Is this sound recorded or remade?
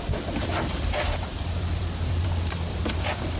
remade